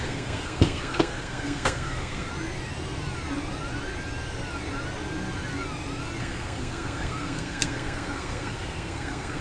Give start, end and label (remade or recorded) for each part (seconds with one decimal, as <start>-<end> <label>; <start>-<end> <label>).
0.0-2.3 remade; 2.3-6.2 recorded; 6.2-9.4 remade